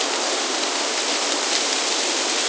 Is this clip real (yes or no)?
yes